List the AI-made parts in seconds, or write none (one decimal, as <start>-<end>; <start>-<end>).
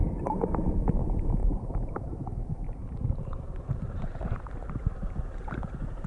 0.0-0.6; 1.4-5.1